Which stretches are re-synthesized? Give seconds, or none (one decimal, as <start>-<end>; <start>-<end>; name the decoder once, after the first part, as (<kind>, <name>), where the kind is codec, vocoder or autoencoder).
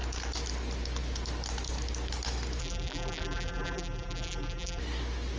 2.6-4.8 (vocoder, BigVGAN v2)